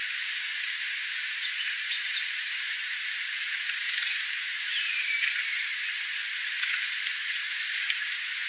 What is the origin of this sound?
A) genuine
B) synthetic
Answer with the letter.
B